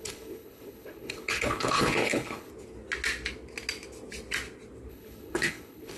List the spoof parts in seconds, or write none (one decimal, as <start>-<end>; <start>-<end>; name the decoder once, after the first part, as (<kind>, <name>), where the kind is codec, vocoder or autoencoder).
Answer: 0.0-2.5 (codec, HILCodec); 4.9-6.0